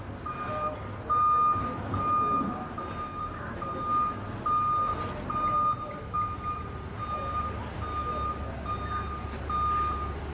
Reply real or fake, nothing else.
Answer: real